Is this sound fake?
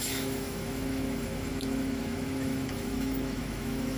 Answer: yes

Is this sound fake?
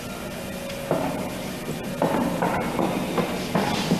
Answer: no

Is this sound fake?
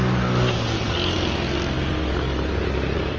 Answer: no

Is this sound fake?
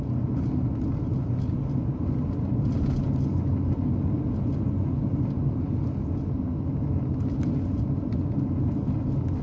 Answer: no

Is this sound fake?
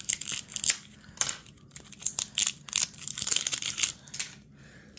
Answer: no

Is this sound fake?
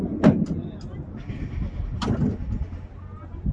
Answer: no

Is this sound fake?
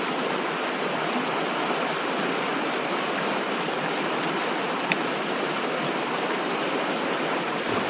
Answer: no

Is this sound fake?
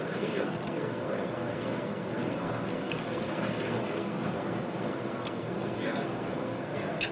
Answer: yes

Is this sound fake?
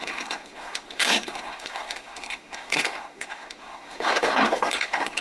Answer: yes